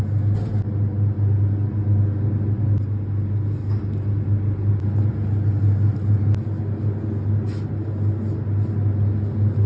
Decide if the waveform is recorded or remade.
recorded